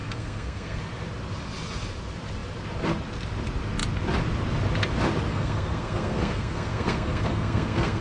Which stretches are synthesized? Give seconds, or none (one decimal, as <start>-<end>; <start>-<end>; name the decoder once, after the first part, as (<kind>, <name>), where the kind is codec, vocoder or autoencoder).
0.0-0.8 (codec, SNAC); 5.3-8.0